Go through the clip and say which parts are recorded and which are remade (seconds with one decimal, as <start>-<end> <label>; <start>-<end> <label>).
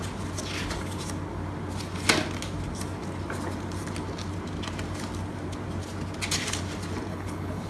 0.0-7.1 recorded; 7.1-7.7 remade